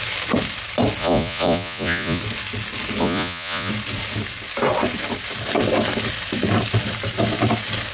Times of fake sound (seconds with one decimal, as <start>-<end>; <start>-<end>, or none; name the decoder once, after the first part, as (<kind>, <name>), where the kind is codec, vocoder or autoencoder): 1.0-2.2 (vocoder, Vocos); 3.0-3.7